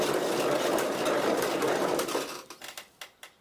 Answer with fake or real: real